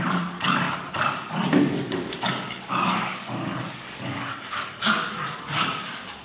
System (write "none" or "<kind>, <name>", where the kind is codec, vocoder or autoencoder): codec, DAC